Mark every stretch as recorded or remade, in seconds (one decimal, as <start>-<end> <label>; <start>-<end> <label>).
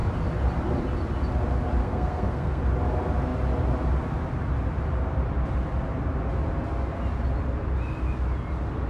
0.0-1.8 recorded; 1.8-2.6 remade; 2.6-8.9 recorded